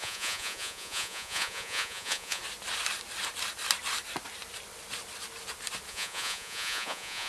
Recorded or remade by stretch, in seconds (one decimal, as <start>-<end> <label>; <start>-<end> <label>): 0.0-2.4 remade; 2.4-5.9 recorded; 5.9-7.3 remade